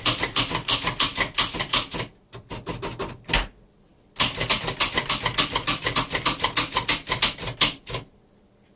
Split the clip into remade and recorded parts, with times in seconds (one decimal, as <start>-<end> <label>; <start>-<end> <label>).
0.0-8.8 recorded